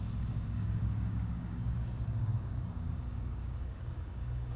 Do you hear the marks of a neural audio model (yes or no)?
yes